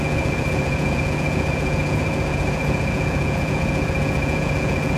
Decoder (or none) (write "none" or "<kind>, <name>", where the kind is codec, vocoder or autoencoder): vocoder, Vocos